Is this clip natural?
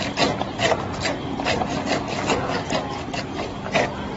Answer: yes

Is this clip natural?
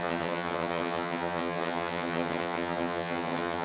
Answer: no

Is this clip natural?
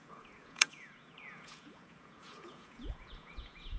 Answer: no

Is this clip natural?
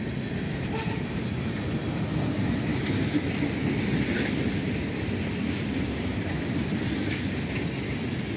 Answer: yes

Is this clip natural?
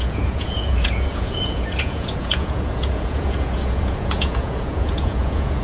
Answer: no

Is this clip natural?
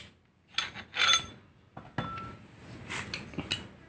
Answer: yes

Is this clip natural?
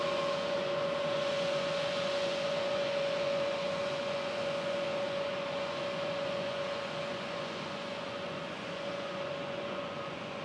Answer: no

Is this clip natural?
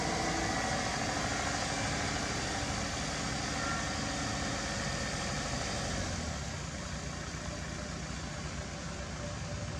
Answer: yes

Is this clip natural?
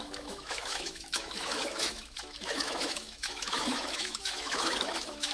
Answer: no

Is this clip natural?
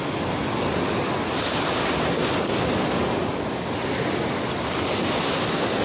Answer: yes